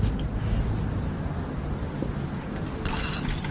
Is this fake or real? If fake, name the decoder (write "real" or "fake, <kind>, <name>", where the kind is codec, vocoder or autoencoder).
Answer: real